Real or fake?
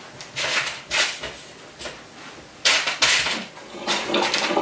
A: real